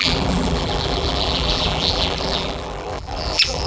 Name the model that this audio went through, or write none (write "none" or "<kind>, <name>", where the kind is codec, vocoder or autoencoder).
vocoder, BigVGAN v2